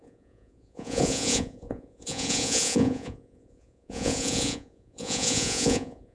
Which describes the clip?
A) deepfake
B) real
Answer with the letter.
A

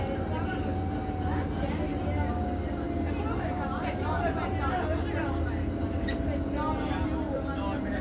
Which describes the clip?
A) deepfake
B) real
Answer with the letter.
B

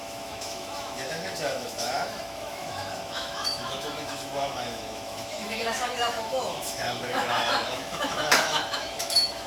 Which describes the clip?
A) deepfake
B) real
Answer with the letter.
A